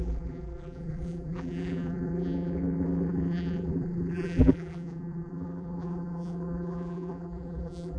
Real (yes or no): no